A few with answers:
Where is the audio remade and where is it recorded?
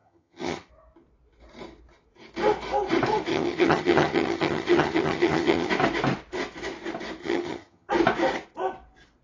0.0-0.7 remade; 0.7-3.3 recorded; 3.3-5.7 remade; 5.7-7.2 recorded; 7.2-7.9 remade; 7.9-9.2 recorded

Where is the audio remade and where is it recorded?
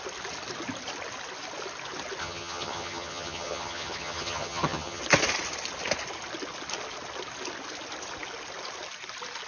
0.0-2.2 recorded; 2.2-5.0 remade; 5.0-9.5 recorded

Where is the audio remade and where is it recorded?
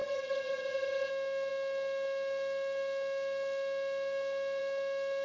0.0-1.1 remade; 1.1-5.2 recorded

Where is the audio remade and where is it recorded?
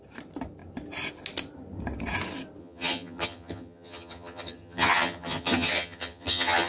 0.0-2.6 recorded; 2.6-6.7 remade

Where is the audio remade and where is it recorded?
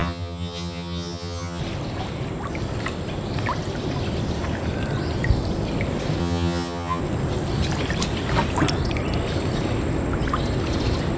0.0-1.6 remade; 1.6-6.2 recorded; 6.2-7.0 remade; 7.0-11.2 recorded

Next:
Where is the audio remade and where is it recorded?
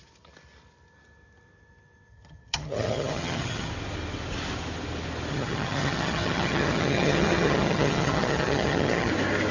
0.0-2.1 recorded; 2.1-3.7 remade; 3.7-5.3 recorded; 5.3-9.1 remade; 9.1-9.5 recorded